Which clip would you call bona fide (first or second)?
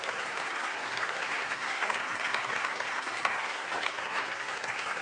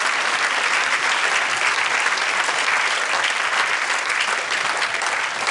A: second